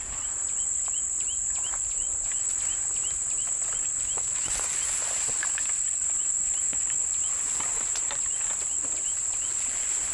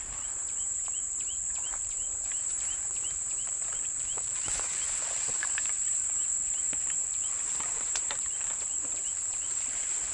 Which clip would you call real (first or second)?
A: first